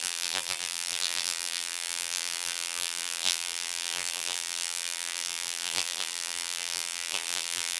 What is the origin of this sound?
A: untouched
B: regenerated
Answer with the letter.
B